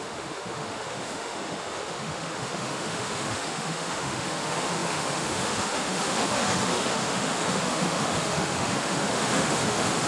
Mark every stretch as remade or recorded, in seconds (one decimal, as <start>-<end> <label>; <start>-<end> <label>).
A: 0.0-10.1 remade

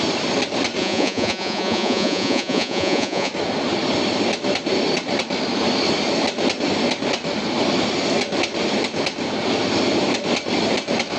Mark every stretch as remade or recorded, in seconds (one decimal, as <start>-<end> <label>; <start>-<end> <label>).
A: 0.0-0.8 recorded; 0.8-3.3 remade; 3.3-11.2 recorded

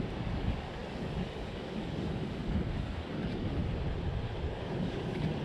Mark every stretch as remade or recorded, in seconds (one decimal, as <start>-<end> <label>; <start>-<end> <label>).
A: 0.0-3.6 remade; 3.6-4.5 recorded; 4.5-5.4 remade